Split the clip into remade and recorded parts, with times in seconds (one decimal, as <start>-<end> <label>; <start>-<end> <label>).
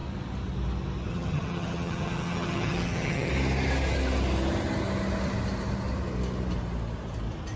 0.0-1.1 recorded; 1.1-3.3 remade; 3.3-7.6 recorded